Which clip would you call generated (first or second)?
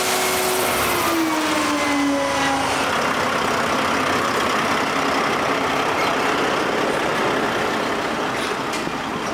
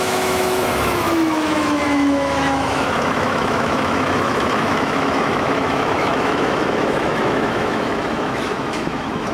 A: second